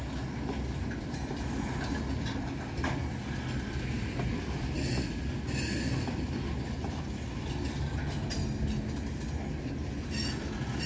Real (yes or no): yes